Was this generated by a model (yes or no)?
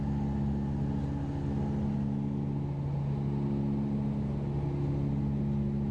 no